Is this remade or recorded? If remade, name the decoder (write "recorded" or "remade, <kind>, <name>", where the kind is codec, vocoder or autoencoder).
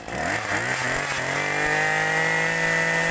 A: recorded